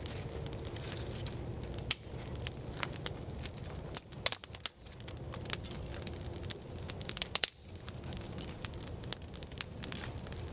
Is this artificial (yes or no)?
no